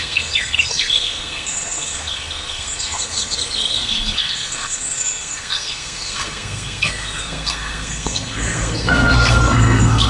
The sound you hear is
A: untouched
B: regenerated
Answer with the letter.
B